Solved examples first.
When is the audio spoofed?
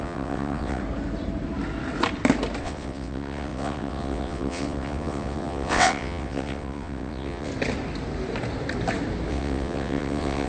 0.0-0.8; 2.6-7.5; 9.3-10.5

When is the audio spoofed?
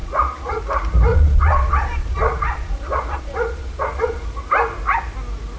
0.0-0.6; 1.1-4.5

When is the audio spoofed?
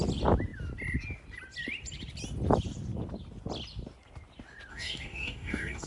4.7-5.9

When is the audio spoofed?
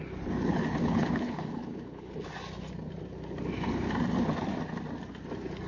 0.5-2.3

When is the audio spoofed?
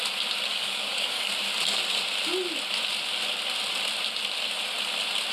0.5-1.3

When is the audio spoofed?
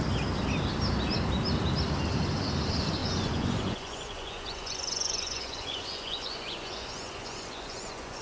3.0-8.2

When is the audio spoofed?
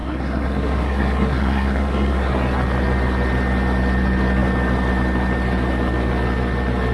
0.0-2.3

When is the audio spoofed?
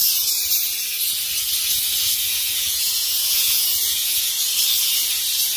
2.0-4.3